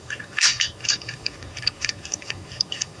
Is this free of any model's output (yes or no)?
no